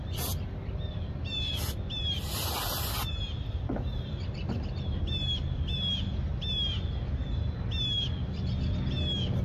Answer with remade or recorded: recorded